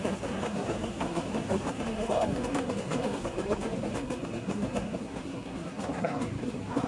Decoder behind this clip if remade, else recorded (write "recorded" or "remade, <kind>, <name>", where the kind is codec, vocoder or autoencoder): remade, codec, SNAC